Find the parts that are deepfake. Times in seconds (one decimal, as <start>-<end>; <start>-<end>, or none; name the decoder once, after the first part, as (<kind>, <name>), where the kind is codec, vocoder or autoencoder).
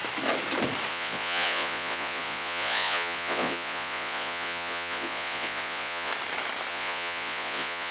0.9-6.1 (vocoder, Vocos); 6.7-7.9